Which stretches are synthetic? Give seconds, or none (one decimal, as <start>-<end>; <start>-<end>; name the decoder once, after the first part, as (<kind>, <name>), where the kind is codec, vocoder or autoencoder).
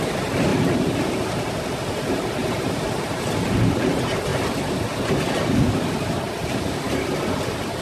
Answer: 0.0-0.5 (vocoder, BigVGAN v2); 3.7-7.8